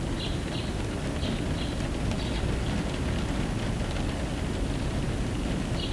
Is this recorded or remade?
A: recorded